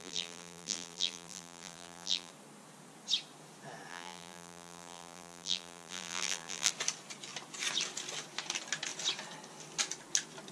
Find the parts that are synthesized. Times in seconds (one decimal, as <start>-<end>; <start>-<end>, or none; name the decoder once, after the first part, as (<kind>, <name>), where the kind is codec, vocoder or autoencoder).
0.0-2.3 (vocoder, BigVGAN v2); 3.9-6.7